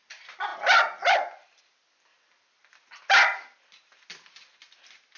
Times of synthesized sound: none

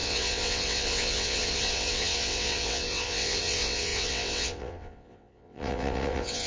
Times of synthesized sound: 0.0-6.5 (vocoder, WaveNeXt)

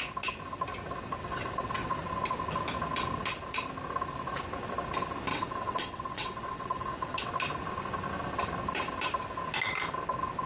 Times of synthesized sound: 1.2-2.0 (vocoder, WaveNeXt); 5.3-7.3

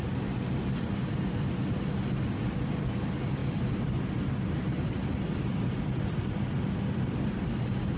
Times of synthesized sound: none